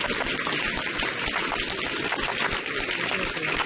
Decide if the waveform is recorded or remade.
recorded